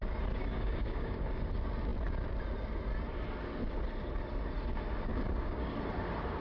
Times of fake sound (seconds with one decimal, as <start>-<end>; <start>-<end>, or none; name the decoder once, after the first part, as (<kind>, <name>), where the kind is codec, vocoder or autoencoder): 0.4-1.5 (codec, DAC); 5.1-5.7